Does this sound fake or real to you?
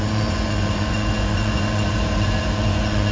fake